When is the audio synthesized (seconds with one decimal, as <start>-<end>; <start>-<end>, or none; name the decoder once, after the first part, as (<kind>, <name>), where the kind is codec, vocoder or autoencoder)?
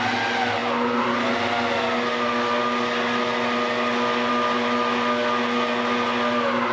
none